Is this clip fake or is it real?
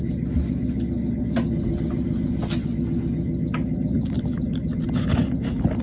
real